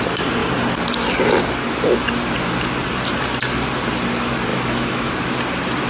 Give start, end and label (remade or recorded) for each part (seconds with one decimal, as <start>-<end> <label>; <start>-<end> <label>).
0.0-4.5 recorded; 4.5-5.1 remade; 5.1-5.9 recorded